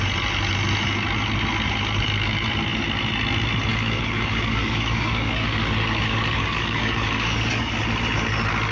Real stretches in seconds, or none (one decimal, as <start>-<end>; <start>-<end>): 0.0-3.7; 7.8-8.7